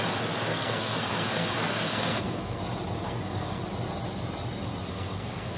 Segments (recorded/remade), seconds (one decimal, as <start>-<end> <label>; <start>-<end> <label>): 0.0-0.5 recorded; 0.5-2.6 remade; 2.6-3.0 recorded; 3.0-3.6 remade; 3.6-4.9 recorded; 4.9-5.6 remade